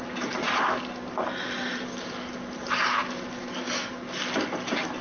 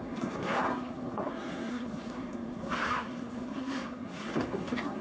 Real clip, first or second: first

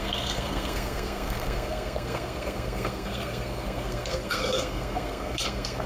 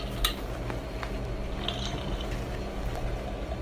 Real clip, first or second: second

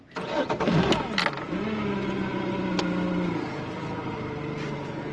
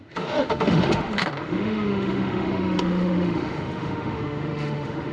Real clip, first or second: first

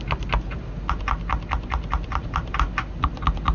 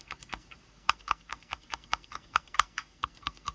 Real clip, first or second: first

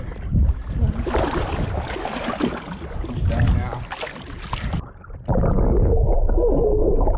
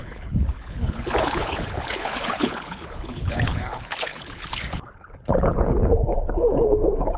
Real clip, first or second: first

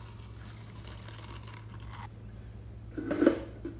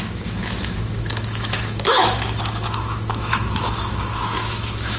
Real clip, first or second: first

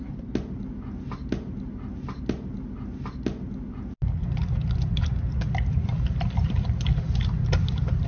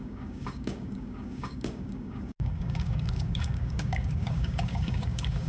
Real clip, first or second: first